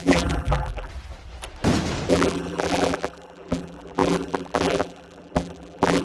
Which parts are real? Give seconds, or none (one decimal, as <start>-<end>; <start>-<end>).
0.9-2.1